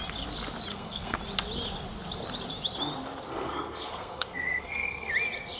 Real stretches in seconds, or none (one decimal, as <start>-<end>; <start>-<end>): 0.0-0.7; 1.2-3.3; 5.1-5.6